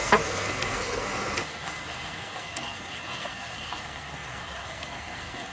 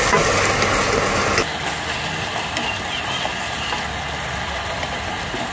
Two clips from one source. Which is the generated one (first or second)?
first